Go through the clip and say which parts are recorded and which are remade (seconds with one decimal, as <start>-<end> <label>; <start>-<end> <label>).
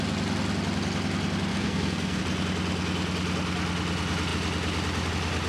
0.0-1.5 recorded; 1.5-2.2 remade; 2.2-5.5 recorded